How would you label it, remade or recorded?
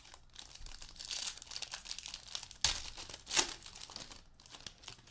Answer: recorded